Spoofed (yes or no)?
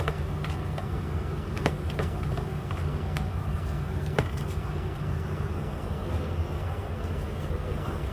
yes